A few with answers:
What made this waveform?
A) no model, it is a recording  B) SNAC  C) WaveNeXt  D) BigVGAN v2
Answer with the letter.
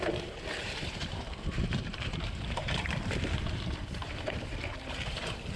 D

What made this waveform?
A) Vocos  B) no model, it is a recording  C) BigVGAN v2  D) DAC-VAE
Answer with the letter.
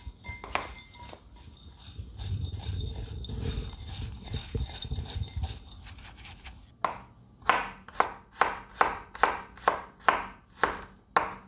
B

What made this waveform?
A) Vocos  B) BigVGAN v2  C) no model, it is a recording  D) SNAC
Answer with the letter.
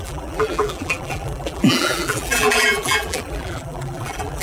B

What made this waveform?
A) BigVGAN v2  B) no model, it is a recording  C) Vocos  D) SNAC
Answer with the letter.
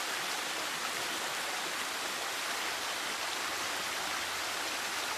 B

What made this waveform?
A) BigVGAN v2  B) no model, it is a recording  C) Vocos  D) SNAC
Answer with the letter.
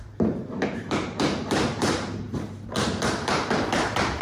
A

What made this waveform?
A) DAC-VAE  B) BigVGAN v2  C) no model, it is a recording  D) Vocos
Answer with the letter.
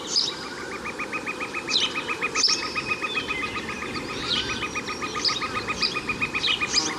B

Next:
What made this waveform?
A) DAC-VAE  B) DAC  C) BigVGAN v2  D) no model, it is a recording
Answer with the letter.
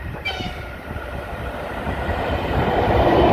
C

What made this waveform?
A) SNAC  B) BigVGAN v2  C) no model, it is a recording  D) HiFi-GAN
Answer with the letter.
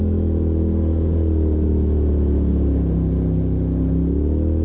C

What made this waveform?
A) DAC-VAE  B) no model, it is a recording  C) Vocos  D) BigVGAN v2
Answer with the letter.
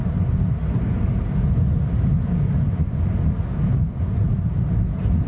B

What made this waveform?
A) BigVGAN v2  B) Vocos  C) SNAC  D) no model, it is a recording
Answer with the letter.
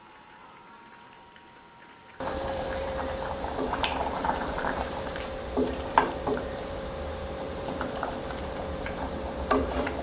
A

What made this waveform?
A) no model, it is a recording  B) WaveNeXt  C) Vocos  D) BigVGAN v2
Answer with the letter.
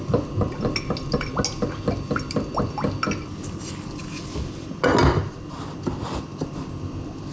A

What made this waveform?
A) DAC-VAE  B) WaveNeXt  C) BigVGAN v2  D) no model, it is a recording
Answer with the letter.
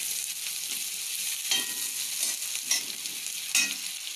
D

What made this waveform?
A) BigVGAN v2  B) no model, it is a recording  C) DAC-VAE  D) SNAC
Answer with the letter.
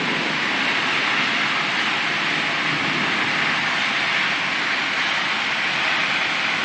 B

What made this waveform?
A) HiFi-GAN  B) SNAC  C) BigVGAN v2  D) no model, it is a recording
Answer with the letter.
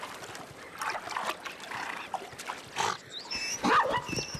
D